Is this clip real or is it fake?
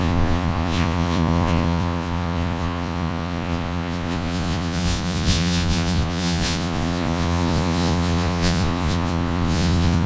fake